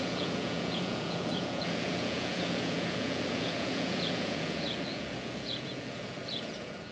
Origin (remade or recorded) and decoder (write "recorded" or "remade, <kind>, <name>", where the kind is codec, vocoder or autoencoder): remade, vocoder, Vocos